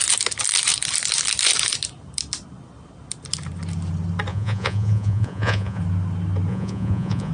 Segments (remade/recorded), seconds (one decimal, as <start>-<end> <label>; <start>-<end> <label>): 0.0-4.3 recorded; 4.3-5.8 remade; 5.8-6.5 recorded; 6.5-7.3 remade